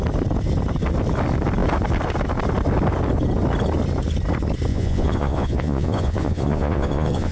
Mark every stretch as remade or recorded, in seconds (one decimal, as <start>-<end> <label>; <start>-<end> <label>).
0.0-4.7 recorded; 4.7-7.3 remade